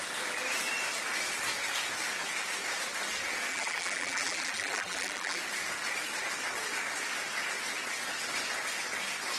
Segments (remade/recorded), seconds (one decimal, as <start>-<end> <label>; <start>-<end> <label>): 0.0-3.5 recorded; 3.5-5.4 remade; 5.4-9.4 recorded